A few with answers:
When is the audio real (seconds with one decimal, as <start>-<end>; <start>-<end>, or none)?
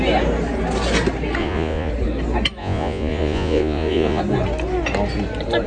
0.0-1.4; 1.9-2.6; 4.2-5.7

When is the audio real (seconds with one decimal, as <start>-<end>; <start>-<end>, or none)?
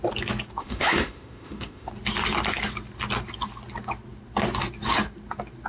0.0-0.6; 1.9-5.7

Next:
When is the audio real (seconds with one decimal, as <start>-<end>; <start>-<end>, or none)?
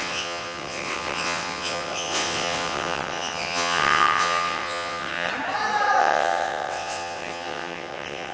5.3-6.0